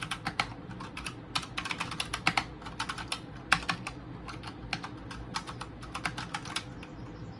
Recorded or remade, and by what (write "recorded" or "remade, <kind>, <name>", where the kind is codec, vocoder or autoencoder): recorded